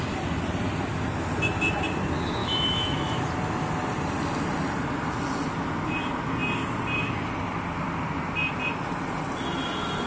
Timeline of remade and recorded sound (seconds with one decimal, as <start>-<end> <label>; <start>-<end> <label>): 0.0-2.4 recorded; 2.4-3.2 remade; 3.2-10.1 recorded